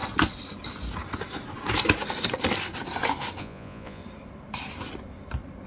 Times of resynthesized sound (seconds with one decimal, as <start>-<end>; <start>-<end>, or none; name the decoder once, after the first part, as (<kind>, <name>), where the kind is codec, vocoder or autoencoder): 3.4-4.0 (vocoder, Vocos)